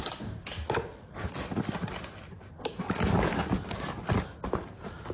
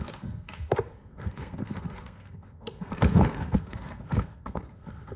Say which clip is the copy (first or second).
second